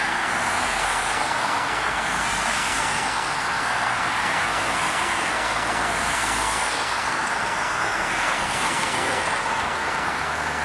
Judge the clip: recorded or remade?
remade